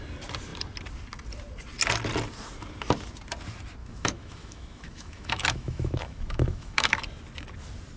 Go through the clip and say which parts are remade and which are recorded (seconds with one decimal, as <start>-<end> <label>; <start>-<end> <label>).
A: 0.0-3.8 recorded; 3.8-7.0 remade; 7.0-8.0 recorded